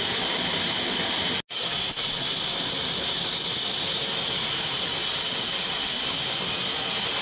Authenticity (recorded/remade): recorded